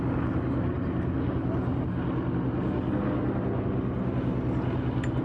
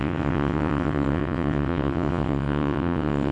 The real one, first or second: first